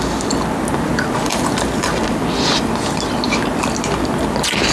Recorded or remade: recorded